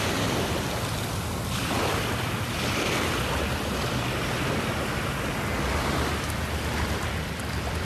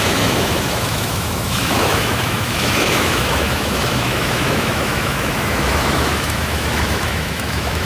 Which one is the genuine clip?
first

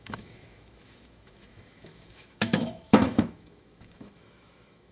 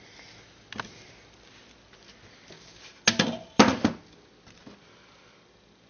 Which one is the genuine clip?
second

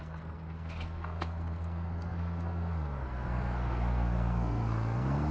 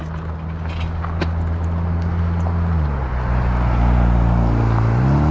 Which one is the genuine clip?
second